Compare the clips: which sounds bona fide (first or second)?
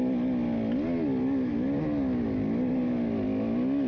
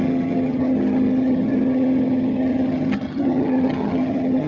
first